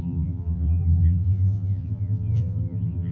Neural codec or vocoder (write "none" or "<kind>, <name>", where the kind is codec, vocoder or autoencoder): vocoder, BigVGAN v2